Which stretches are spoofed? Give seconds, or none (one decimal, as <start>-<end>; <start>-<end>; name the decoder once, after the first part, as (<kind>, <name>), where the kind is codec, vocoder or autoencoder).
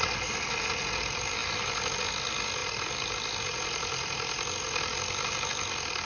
none